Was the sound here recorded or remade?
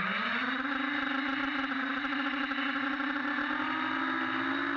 recorded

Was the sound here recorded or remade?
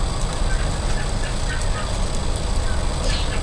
recorded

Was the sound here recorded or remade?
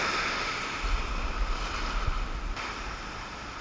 recorded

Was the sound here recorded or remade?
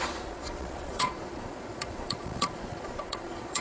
remade